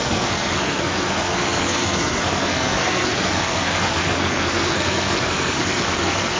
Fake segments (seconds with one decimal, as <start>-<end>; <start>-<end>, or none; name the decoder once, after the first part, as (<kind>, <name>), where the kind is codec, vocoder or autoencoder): 0.0-6.4 (codec, SNAC)

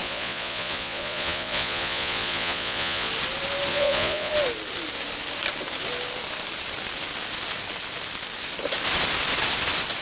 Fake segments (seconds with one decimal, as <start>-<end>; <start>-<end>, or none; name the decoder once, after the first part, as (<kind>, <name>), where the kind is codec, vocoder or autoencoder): 0.0-3.1 (vocoder, Vocos); 3.7-4.3

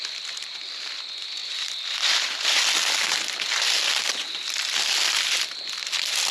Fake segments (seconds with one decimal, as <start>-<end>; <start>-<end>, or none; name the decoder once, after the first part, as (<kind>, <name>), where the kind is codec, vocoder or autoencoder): none

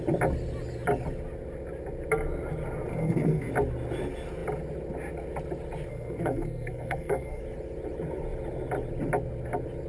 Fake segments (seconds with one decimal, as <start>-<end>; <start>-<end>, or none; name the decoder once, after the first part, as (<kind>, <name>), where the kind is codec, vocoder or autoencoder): 2.9-3.5 (codec, SNAC); 5.9-7.4

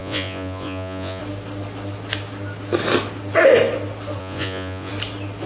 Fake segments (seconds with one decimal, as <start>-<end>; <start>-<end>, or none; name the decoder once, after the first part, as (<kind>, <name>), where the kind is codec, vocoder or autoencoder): 0.0-1.2 (vocoder, Vocos); 4.2-4.9

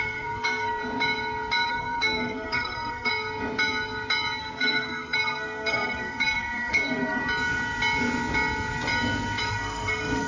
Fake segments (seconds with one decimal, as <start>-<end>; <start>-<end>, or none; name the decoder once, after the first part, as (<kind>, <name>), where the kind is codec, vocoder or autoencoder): 0.0-0.8 (codec, SNAC); 1.7-3.1; 4.4-7.2; 9.5-10.3

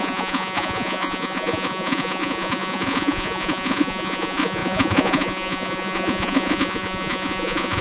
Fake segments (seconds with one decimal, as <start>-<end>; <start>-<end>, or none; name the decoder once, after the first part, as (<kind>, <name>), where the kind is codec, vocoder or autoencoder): 0.0-7.8 (vocoder, Vocos)